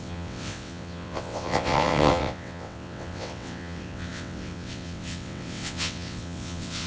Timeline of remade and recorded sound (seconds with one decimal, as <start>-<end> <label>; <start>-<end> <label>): 0.0-6.9 remade